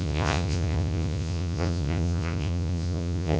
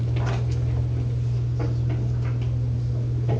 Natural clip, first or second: second